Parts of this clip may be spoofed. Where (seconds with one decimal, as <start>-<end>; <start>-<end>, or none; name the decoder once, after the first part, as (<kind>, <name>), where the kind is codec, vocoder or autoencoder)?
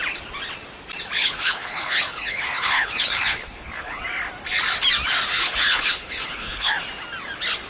1.2-4.0 (codec, HILCodec); 5.4-6.7